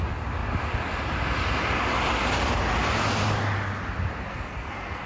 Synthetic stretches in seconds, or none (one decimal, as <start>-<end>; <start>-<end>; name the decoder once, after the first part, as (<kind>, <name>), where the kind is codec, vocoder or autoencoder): 4.3-5.1 (codec, SNAC)